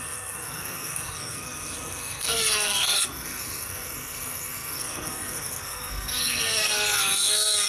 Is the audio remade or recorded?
remade